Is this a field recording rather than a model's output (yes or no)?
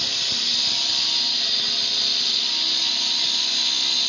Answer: yes